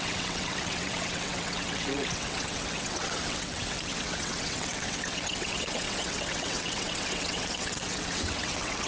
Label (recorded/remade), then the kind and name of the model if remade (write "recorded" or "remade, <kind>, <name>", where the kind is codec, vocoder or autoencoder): remade, vocoder, WaveNeXt